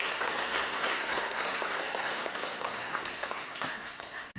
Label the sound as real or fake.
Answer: fake